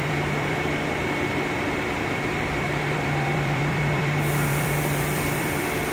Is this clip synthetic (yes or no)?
yes